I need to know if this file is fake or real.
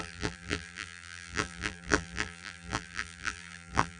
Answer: fake